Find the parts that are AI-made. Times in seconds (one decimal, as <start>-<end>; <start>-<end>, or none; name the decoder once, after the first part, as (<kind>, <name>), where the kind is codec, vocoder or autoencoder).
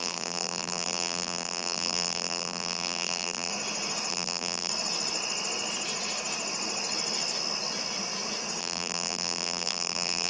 0.0-3.5 (vocoder, BigVGAN v2); 4.1-4.7; 8.6-10.3